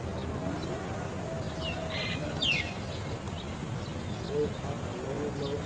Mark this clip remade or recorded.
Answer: recorded